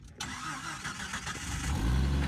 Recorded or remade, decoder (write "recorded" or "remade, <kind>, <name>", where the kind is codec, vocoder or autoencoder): recorded